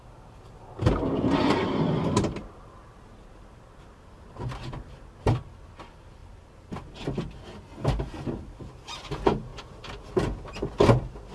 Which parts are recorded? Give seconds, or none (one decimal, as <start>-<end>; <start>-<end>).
0.0-11.3